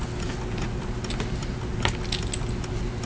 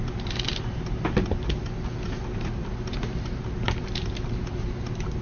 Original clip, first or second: first